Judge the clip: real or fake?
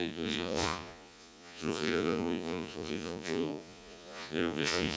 fake